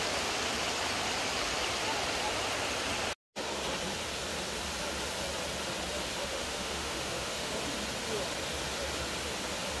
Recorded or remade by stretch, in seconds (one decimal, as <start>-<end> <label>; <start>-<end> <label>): 0.0-6.2 recorded; 6.2-7.5 remade; 7.5-9.8 recorded